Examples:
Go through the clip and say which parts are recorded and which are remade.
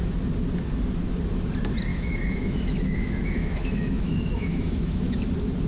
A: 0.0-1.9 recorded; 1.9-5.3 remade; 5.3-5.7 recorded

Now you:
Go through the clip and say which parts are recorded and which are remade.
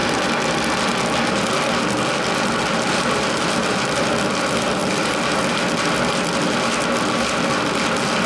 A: 0.0-8.3 recorded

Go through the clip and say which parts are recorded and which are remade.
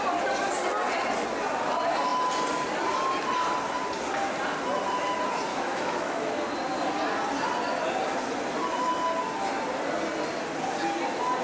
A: 0.0-5.5 recorded; 5.5-6.3 remade; 6.3-11.4 recorded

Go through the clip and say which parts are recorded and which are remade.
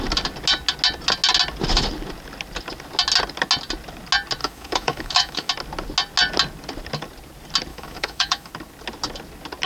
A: 0.0-4.4 recorded; 4.4-5.5 remade; 5.5-7.7 recorded; 7.7-8.5 remade; 8.5-9.7 recorded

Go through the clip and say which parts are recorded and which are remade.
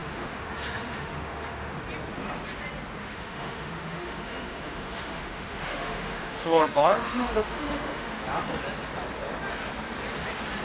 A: 0.0-1.8 remade; 1.8-3.0 recorded; 3.0-8.2 remade; 8.2-10.6 recorded